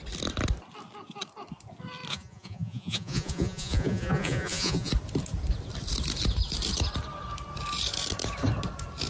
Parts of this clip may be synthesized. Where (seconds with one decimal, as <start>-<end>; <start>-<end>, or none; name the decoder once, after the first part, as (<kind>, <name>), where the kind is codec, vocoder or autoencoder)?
2.1-4.9 (vocoder, Vocos)

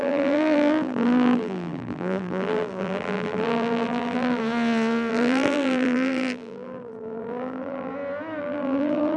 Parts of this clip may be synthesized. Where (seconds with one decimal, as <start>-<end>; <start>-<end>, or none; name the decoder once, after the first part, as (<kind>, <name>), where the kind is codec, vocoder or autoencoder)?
0.0-4.4 (vocoder, BigVGAN v2); 5.1-7.9; 8.4-9.2